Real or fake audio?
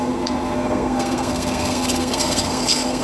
fake